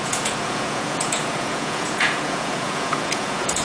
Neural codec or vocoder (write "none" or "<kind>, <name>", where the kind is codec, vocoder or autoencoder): vocoder, Vocos